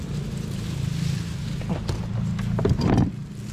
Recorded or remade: recorded